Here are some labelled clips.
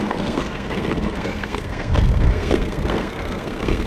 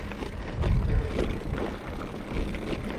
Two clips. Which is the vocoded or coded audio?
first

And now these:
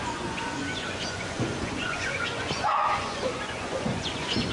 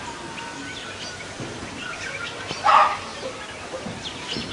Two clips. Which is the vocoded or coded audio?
first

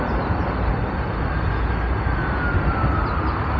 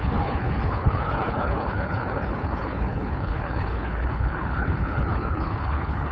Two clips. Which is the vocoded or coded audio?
second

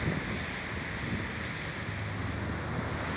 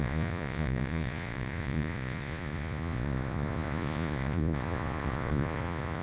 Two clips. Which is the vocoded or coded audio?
second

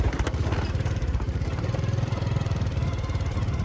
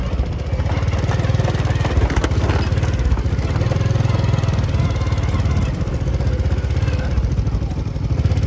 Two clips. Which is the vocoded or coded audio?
first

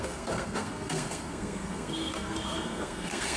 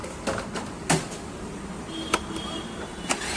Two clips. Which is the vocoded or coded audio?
first